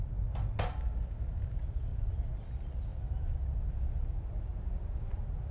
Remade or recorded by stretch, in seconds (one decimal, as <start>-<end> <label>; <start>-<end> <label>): 0.0-5.5 recorded